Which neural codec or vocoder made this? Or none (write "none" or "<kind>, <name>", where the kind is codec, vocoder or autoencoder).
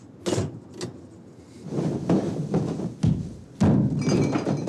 none